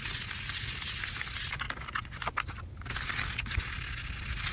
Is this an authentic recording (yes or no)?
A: yes